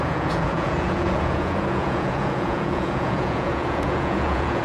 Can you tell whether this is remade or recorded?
remade